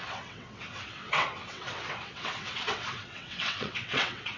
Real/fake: fake